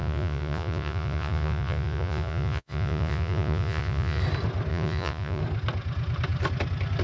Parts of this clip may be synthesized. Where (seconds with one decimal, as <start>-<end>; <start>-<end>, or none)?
0.0-4.2; 4.7-5.4